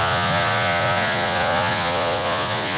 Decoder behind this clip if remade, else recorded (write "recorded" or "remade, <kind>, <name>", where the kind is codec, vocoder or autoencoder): remade, vocoder, Vocos